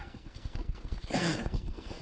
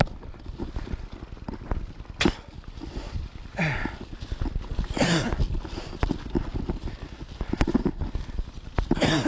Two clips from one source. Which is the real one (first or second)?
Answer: second